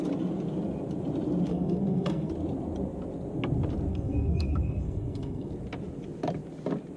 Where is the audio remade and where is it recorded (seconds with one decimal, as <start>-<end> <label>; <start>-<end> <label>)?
0.0-1.5 recorded; 1.5-2.3 remade; 2.3-3.9 recorded; 3.9-5.5 remade; 5.5-7.0 recorded